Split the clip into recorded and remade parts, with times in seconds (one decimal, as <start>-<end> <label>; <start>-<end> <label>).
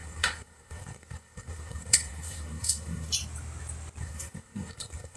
0.0-3.1 remade; 3.1-4.0 recorded; 4.0-5.2 remade